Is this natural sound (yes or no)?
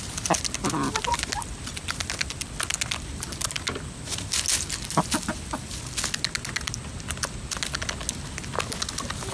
yes